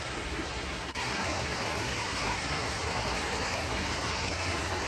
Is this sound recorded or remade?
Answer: remade